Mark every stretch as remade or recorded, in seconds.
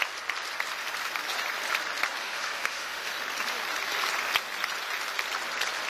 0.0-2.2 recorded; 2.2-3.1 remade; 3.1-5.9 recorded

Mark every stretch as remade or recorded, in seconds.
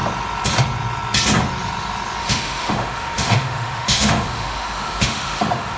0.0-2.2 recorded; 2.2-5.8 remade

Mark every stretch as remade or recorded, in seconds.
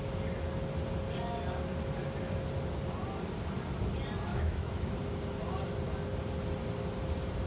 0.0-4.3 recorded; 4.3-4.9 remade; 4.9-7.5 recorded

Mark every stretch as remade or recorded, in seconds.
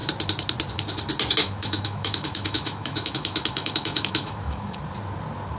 0.0-1.4 recorded; 1.4-4.8 remade; 4.8-5.6 recorded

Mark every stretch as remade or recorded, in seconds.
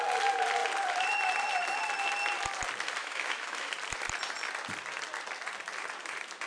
0.0-3.0 recorded; 3.0-3.7 remade; 3.7-6.5 recorded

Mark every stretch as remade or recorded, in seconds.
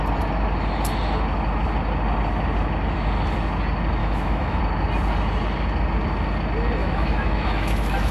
0.0-4.0 recorded; 4.0-4.6 remade; 4.6-6.8 recorded; 6.8-8.1 remade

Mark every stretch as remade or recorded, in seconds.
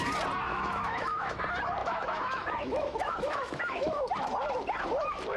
0.0-0.5 recorded; 0.5-1.4 remade; 1.4-1.8 recorded; 1.8-4.1 remade; 4.1-5.4 recorded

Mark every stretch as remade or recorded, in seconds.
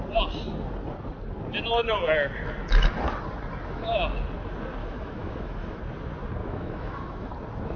0.0-4.8 recorded; 4.8-5.8 remade; 5.8-6.4 recorded; 6.4-7.3 remade; 7.3-7.8 recorded